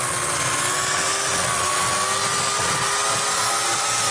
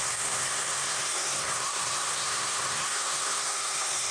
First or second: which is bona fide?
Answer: first